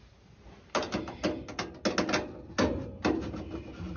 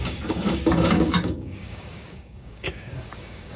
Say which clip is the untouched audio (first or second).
first